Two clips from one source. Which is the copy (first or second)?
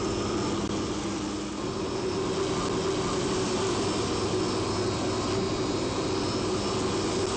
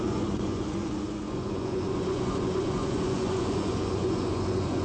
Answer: second